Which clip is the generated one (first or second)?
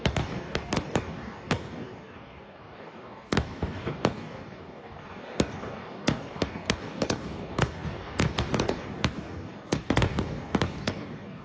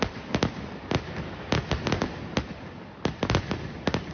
first